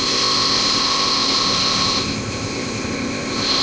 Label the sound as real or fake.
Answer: fake